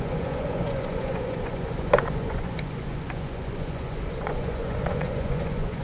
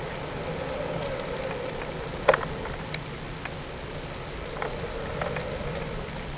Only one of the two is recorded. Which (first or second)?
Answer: second